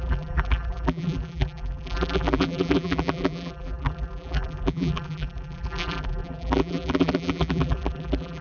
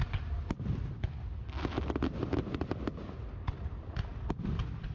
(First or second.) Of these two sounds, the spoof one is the first